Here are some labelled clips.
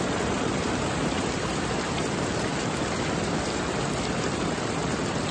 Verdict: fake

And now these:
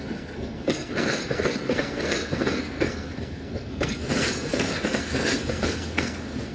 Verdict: fake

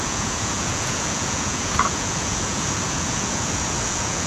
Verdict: fake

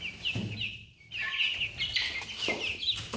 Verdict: real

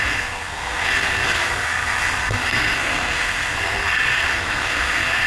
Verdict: fake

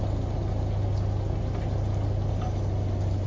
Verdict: real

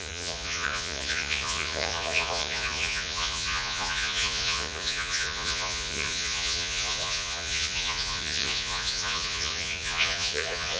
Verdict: fake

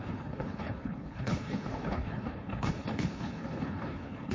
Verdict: fake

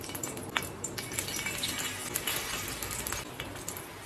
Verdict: real